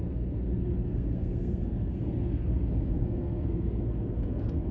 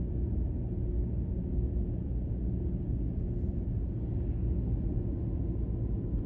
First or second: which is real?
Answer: second